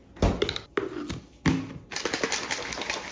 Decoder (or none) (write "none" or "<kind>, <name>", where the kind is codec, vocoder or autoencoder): none